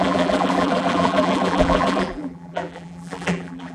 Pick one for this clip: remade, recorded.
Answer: remade